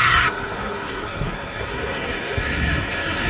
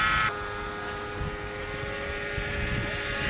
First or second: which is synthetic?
first